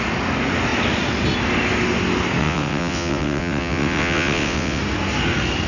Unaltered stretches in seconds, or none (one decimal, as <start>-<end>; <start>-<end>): 0.0-2.4; 4.8-5.7